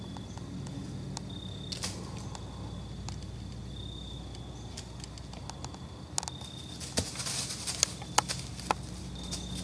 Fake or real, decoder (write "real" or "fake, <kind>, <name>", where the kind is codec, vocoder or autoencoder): real